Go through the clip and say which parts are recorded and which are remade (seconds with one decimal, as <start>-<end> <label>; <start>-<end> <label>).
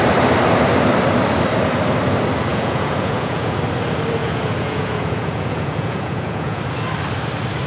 0.0-2.5 recorded; 2.5-3.6 remade; 3.6-4.2 recorded; 4.2-6.6 remade; 6.6-7.7 recorded